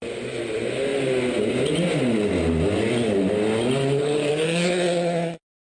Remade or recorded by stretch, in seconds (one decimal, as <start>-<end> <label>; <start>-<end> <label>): 0.0-5.7 recorded